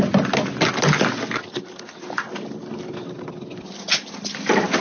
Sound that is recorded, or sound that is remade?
recorded